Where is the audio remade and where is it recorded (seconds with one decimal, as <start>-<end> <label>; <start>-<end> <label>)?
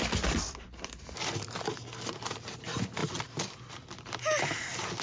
0.0-5.0 recorded